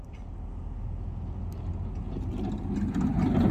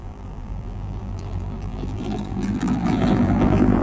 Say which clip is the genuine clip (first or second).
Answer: first